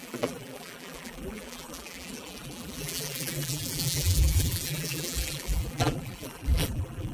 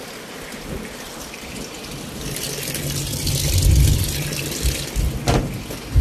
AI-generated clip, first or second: first